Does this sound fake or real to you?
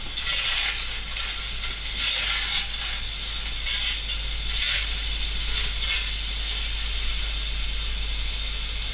real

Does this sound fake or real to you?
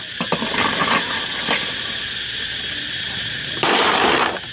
real